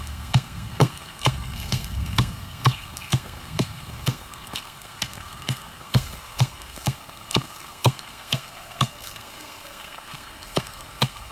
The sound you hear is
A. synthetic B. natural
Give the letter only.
A